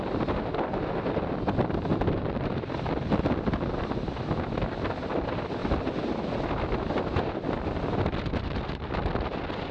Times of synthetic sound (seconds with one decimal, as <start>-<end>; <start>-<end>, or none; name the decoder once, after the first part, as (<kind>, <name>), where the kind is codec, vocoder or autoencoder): 1.9-2.5 (vocoder, BigVGAN v2)